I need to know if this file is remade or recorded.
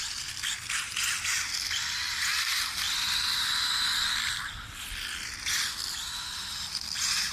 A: recorded